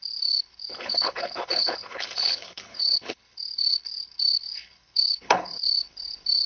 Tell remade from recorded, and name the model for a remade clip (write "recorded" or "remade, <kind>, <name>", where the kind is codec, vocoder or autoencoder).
remade, codec, HILCodec